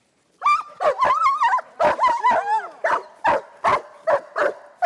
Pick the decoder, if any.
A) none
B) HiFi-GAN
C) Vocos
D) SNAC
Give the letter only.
A